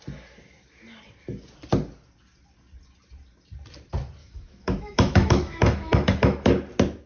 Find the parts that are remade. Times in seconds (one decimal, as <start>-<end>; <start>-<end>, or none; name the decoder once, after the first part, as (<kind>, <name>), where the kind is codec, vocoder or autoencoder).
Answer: 4.2-6.5 (autoencoder, DAC-VAE)